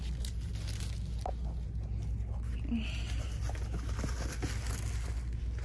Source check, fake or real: real